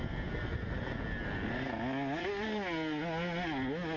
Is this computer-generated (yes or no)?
no